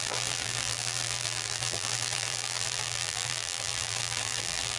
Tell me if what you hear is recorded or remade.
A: remade